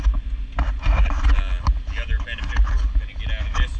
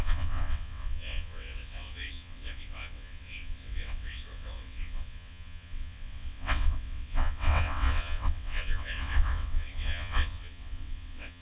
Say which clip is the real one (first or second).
first